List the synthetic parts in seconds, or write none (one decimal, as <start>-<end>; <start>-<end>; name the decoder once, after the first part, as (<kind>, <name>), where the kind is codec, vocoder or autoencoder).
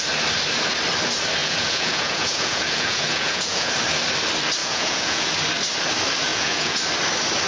1.4-3.7 (vocoder, Vocos); 4.6-5.3; 6.3-6.8